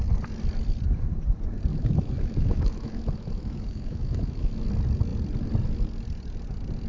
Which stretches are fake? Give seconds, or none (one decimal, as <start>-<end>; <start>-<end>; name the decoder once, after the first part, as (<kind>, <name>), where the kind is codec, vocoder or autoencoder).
1.7-4.5 (autoencoder, DAC-VAE)